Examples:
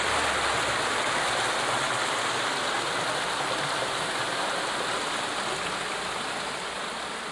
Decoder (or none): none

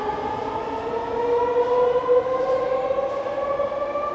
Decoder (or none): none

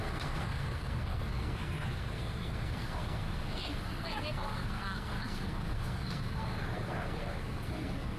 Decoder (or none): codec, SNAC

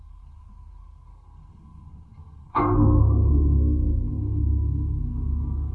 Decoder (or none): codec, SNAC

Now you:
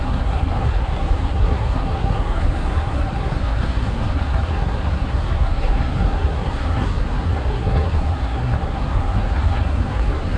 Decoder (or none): codec, SNAC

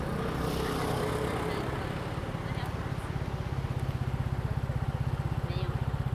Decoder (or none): none